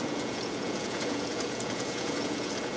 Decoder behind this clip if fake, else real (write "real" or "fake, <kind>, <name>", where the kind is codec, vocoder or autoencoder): fake, vocoder, Vocos